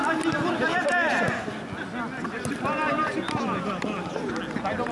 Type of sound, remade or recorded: recorded